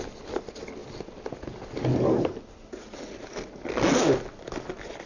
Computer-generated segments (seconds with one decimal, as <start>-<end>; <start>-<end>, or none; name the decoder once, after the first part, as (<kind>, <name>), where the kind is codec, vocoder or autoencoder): none